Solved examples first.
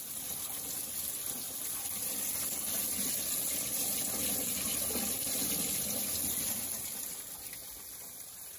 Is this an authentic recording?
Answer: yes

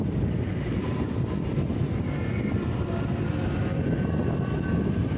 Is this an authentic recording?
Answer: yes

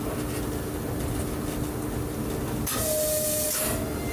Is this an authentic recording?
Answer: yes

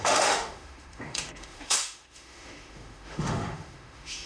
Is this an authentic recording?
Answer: no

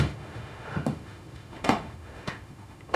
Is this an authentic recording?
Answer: no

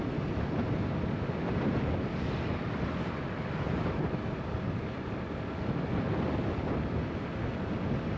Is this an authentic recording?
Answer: yes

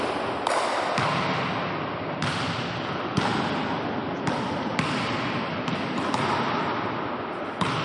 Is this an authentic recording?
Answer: yes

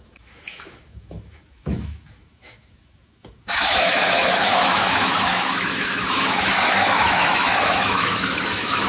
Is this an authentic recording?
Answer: no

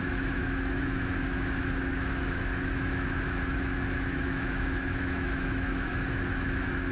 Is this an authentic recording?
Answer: no